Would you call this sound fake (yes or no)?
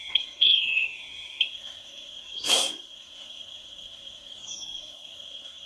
yes